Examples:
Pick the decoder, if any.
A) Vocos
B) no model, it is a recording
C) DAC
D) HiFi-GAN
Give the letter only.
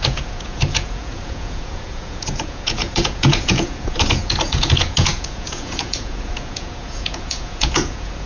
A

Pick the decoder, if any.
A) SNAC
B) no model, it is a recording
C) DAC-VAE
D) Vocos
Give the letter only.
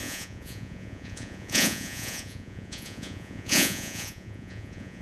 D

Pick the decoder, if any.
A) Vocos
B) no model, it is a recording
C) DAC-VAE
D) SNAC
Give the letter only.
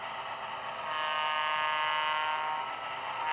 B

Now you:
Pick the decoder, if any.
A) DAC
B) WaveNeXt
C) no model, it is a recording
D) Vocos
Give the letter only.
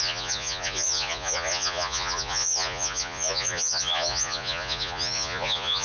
D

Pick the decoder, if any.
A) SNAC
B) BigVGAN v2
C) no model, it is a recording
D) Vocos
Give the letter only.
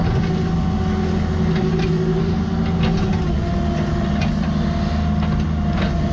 C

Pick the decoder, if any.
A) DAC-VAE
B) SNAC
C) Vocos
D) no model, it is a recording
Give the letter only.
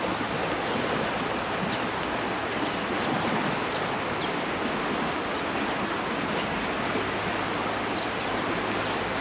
D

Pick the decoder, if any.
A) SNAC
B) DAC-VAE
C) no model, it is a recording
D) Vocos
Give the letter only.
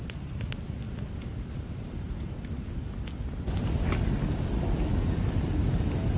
C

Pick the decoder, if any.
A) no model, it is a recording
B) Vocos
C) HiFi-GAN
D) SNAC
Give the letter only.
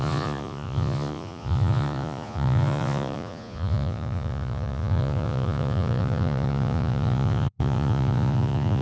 B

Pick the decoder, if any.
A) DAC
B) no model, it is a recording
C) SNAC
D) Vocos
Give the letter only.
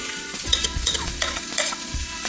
D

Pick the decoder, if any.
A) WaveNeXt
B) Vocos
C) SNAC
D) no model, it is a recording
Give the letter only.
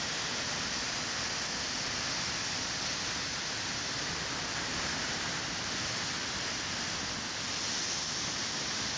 D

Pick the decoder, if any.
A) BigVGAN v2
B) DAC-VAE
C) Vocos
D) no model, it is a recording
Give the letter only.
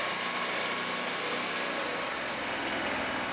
D